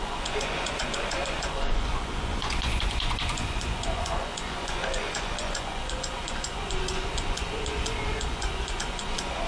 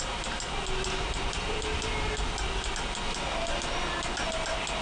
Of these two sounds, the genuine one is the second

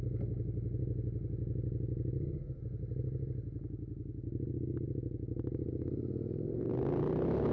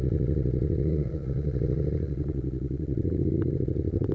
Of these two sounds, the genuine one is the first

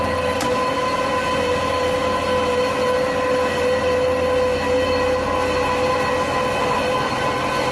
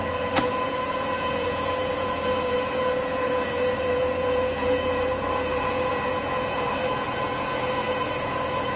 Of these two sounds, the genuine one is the first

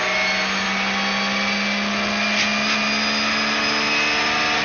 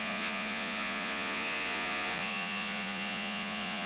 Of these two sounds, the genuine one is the first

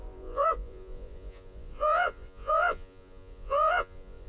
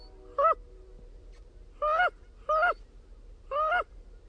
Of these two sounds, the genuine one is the second